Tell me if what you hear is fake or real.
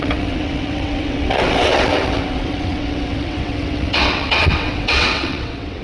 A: fake